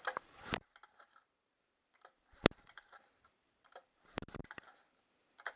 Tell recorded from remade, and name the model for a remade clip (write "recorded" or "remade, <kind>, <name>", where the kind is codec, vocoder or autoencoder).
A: remade, vocoder, BigVGAN v2